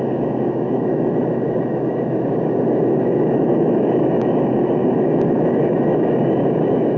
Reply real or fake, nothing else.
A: fake